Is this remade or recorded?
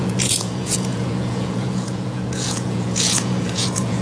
remade